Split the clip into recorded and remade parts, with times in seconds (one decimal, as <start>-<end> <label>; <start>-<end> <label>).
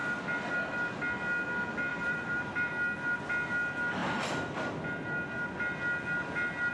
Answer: 0.0-1.9 recorded; 1.9-2.7 remade; 2.7-6.7 recorded